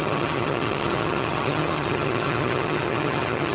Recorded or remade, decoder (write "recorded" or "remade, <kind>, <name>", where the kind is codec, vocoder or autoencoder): remade, vocoder, HiFi-GAN